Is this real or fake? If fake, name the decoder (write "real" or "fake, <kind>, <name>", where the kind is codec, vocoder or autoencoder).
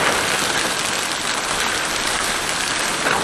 real